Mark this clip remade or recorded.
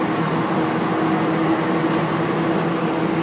recorded